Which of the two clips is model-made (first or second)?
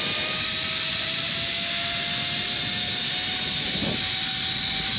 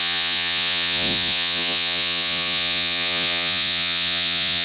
second